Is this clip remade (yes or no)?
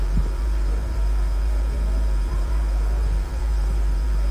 yes